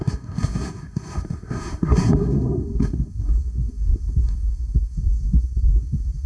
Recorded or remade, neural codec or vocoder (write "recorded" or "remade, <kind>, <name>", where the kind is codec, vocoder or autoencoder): remade, codec, SNAC